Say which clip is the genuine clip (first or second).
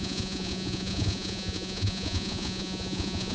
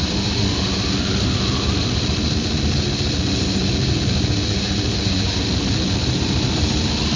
second